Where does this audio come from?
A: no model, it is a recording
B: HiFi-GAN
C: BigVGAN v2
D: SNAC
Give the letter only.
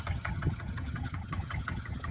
B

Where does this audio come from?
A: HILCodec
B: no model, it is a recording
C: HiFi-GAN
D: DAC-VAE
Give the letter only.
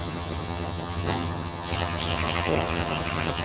C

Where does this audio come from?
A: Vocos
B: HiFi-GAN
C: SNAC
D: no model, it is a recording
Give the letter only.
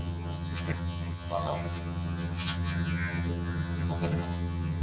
B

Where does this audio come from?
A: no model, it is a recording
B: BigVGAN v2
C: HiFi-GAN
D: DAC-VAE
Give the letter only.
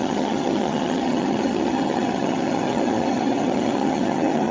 C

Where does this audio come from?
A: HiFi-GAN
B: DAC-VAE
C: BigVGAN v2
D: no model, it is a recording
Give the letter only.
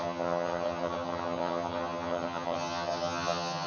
A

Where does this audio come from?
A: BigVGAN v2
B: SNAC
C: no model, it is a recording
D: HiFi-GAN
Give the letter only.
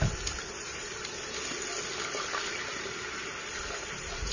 C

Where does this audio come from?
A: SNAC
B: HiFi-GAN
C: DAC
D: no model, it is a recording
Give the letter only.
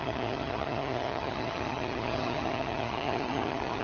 B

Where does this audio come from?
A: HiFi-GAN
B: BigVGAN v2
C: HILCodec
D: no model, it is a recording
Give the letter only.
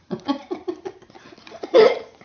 D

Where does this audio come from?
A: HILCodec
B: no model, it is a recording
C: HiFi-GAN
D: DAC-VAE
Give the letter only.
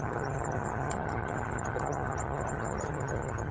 C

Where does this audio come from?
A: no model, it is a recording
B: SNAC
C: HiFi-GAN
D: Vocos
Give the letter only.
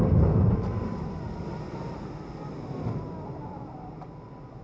A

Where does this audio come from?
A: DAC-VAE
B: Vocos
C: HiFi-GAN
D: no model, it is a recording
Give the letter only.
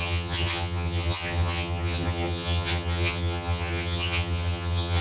C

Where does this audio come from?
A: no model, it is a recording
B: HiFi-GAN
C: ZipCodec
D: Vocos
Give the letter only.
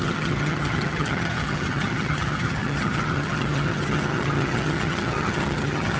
B